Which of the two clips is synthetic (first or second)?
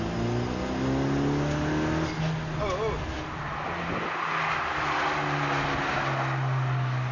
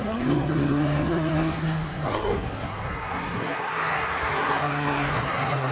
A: second